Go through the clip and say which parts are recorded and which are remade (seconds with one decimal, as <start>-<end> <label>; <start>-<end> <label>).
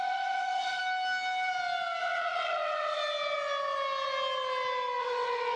0.0-0.8 remade; 0.8-2.0 recorded; 2.0-3.0 remade; 3.0-5.0 recorded; 5.0-5.6 remade